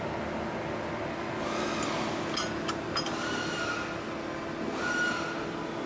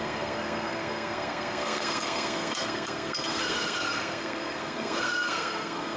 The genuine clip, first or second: first